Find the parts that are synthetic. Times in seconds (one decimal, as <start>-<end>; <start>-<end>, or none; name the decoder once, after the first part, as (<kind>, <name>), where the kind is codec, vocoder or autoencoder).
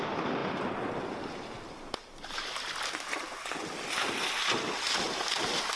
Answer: none